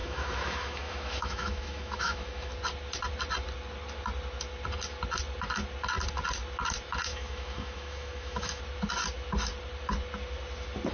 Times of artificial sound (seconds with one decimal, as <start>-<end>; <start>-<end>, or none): 0.0-2.5; 7.1-8.6

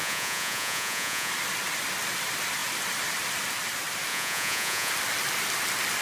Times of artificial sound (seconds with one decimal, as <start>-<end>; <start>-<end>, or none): 0.0-1.3; 4.1-4.9

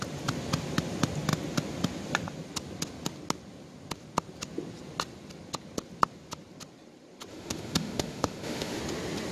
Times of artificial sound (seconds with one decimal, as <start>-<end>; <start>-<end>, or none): 7.3-8.8